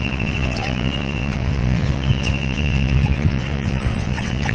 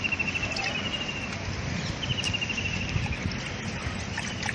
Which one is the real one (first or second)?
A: second